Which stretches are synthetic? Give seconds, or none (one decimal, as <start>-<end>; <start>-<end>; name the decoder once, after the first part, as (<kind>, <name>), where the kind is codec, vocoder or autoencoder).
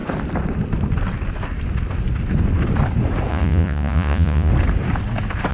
3.3-4.5 (vocoder, Vocos)